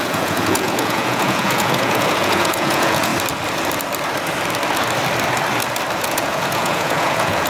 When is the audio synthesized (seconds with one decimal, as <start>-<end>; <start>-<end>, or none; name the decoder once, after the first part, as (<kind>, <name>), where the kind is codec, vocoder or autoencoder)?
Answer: 0.0-3.1 (vocoder, Vocos); 6.0-7.5